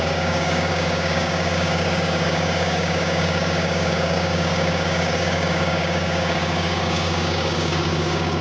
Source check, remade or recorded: remade